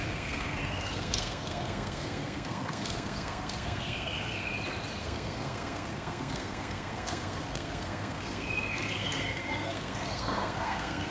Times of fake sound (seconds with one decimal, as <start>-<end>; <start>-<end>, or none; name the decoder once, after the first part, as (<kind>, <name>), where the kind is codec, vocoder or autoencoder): 0.0-4.5 (codec, SNAC); 5.0-11.1